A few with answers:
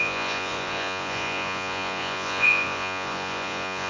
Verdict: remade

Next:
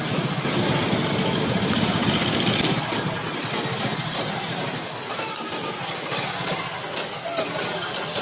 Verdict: recorded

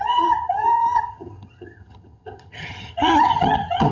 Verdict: remade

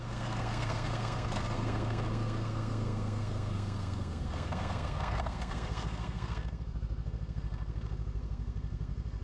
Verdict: remade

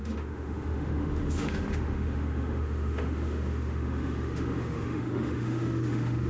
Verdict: remade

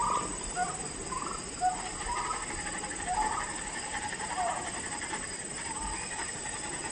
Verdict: recorded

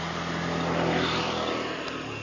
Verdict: recorded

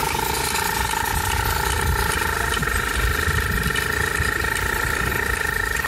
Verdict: recorded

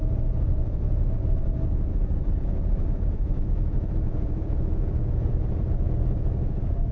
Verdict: remade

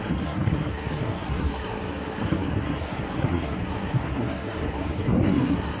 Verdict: remade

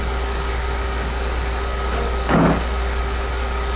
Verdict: remade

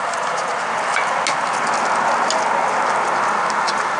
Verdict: recorded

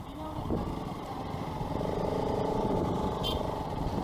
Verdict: remade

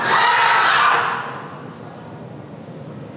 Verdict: recorded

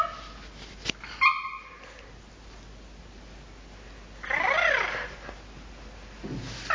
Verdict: recorded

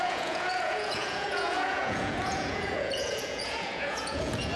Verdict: remade